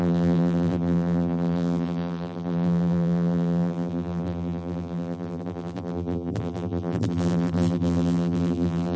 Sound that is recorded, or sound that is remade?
remade